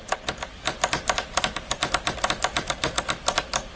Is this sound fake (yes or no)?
no